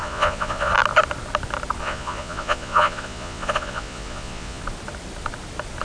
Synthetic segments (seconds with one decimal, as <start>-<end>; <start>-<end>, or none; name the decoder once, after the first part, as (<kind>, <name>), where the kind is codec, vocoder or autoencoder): 0.0-0.7 (vocoder, Vocos); 1.8-4.6